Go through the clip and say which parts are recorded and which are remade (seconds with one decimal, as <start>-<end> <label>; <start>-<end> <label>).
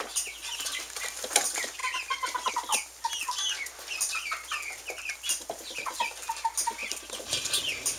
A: 0.0-8.0 recorded